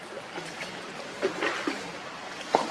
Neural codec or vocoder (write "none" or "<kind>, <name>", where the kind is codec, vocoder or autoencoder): none